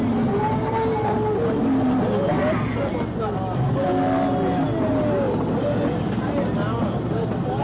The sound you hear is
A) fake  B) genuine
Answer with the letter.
B